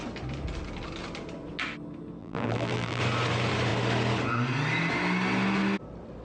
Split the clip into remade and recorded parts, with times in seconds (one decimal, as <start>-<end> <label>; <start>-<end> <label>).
0.0-2.2 recorded; 2.2-3.0 remade; 3.0-6.2 recorded